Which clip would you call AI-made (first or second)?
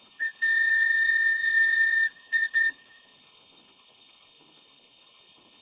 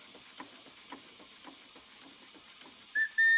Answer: first